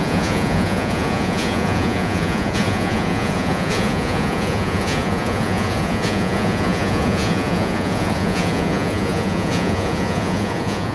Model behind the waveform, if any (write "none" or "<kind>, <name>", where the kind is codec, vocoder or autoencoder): vocoder, Vocos